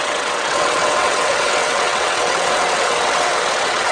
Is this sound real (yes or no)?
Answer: no